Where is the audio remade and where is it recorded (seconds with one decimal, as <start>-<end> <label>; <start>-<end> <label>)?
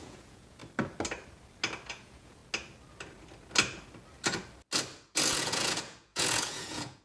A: 0.0-0.6 remade; 0.6-1.9 recorded; 1.9-2.4 remade; 2.4-5.3 recorded; 5.3-7.0 remade